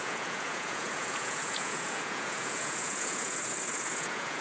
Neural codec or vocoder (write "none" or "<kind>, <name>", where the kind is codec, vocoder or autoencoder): vocoder, Vocos